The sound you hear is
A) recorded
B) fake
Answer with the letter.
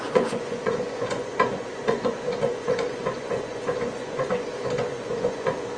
B